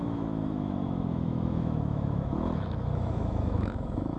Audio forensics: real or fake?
fake